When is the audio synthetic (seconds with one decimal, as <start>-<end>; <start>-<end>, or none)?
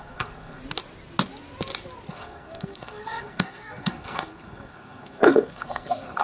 0.0-0.6; 2.1-6.2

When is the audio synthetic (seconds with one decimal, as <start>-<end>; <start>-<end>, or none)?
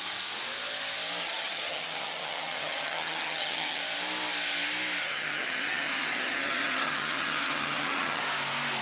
1.2-3.8; 5.0-8.2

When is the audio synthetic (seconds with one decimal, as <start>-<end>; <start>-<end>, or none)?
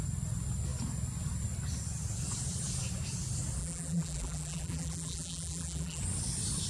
3.6-6.0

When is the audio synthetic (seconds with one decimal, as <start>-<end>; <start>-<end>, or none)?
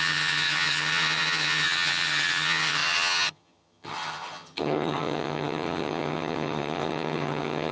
0.0-7.7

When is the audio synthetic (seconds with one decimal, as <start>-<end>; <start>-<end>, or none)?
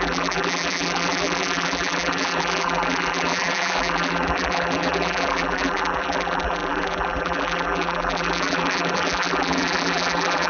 0.0-10.5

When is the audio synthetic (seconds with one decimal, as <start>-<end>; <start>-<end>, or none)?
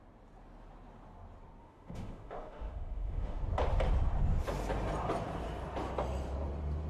1.6-3.4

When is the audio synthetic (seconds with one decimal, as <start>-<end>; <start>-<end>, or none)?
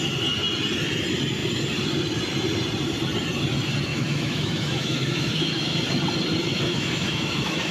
3.9-5.8; 6.5-7.7